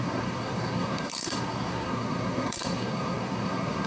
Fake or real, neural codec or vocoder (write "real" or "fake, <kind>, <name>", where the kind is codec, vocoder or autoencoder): fake, codec, SNAC